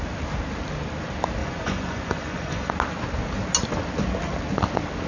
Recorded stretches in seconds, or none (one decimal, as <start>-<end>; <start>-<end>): 0.0-1.4; 2.7-5.1